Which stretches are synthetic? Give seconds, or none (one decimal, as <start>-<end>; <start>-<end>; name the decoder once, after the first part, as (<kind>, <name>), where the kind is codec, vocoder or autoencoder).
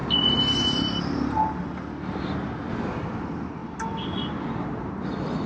none